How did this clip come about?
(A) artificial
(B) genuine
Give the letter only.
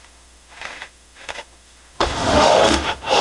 A